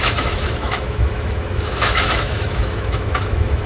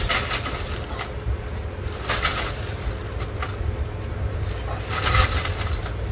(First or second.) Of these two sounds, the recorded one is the second